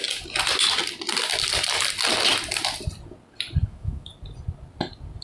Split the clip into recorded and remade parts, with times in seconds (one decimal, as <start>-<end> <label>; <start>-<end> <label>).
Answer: 0.0-3.6 recorded; 3.6-4.1 remade; 4.1-5.2 recorded